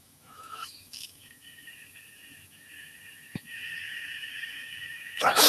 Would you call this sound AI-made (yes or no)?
yes